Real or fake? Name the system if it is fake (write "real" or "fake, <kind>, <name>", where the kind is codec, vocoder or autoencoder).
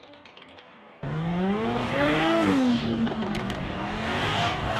fake, codec, DAC